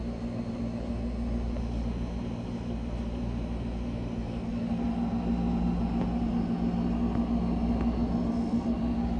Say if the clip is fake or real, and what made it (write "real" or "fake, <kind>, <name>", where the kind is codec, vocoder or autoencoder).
real